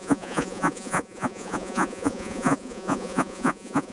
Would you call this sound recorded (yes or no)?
no